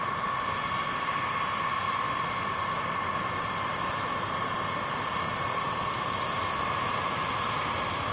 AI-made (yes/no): yes